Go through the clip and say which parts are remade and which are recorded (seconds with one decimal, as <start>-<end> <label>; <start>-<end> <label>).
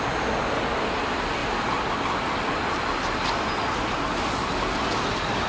0.0-5.5 recorded